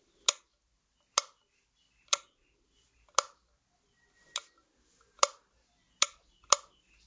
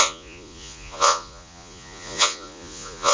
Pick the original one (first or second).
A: first